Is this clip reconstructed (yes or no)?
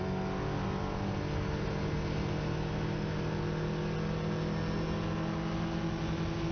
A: no